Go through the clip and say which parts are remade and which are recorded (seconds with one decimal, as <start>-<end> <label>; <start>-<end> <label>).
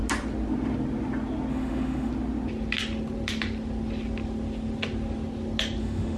0.0-1.5 recorded; 1.5-2.1 remade; 2.1-5.8 recorded; 5.8-6.2 remade